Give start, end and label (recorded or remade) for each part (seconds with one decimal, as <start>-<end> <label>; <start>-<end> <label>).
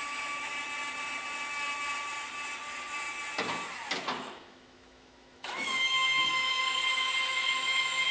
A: 0.0-0.5 remade; 0.5-4.2 recorded; 4.2-6.8 remade; 6.8-7.3 recorded; 7.3-8.1 remade